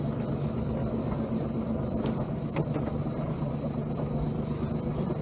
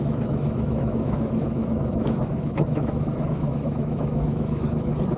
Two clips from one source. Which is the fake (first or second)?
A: second